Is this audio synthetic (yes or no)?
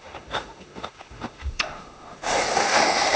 yes